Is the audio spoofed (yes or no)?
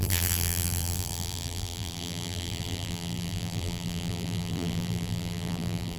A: yes